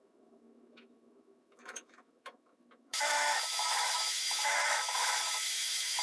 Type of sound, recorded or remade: remade